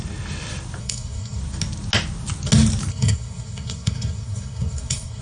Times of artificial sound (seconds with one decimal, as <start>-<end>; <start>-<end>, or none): 0.8-1.4; 2.9-5.2